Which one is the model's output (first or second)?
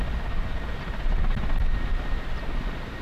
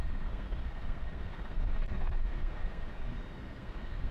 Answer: second